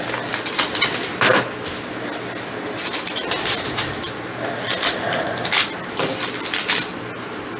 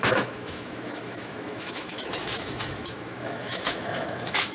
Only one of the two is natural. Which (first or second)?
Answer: first